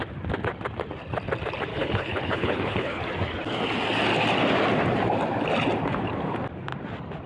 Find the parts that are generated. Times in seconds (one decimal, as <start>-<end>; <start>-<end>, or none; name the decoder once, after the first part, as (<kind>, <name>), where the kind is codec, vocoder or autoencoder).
1.7-3.0 (codec, HILCodec)